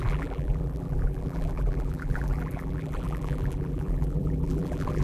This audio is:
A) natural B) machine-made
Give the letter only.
B